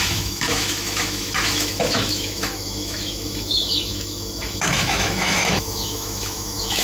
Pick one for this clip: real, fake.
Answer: fake